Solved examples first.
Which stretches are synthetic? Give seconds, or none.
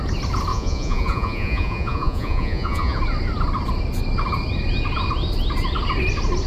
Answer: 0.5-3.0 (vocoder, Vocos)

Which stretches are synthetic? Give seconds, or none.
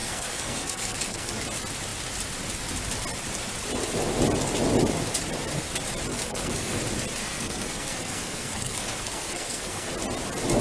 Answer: 0.0-1.3 (codec, SNAC); 6.1-6.8; 7.2-9.9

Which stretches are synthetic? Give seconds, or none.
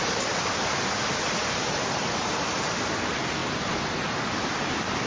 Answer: none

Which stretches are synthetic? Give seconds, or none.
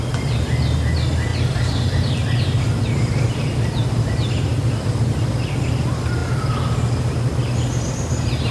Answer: none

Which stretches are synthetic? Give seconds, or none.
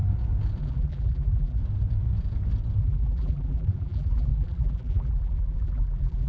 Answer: 0.6-1.6 (vocoder, BigVGAN v2); 2.8-6.3